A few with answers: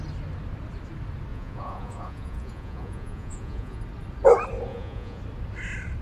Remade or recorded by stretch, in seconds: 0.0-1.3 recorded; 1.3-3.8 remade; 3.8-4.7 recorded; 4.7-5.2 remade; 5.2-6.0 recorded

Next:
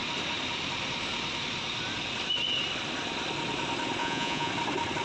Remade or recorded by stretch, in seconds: 0.0-4.0 recorded; 4.0-4.5 remade; 4.5-5.0 recorded

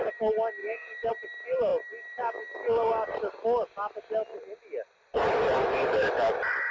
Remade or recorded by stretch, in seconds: 0.0-0.6 recorded; 0.6-1.1 remade; 1.1-6.7 recorded

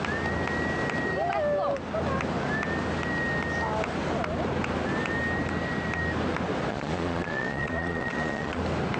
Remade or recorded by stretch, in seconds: 0.0-6.7 recorded; 6.7-8.6 remade; 8.6-9.0 recorded

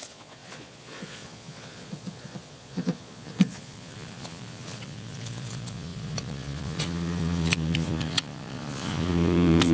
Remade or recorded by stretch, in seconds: 0.0-9.7 remade